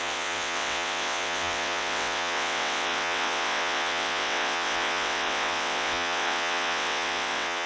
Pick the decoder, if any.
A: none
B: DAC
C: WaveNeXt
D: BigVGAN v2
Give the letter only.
C